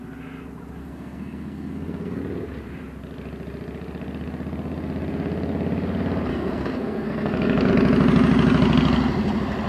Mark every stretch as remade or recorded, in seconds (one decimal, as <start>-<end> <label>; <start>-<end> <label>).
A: 0.0-0.8 recorded; 0.8-2.2 remade; 2.2-6.3 recorded; 6.3-7.7 remade; 7.7-9.7 recorded